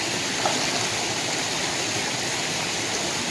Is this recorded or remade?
recorded